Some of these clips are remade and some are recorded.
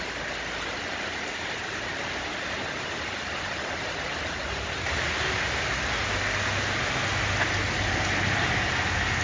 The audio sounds recorded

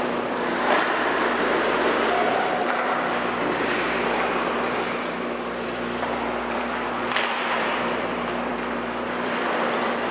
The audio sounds remade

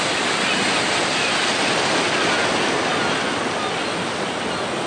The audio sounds recorded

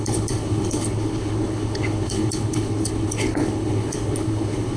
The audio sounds remade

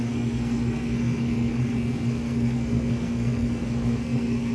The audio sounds remade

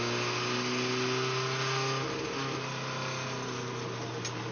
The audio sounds recorded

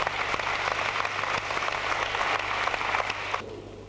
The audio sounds recorded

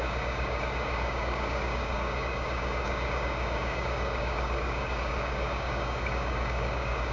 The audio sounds remade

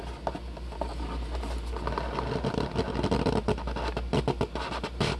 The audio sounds recorded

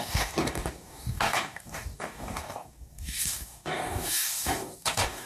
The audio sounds remade